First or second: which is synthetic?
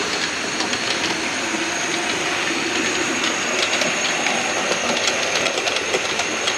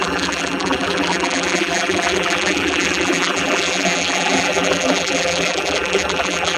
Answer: second